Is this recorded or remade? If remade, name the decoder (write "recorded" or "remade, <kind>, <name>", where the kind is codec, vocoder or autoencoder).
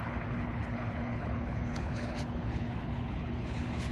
remade, codec, HILCodec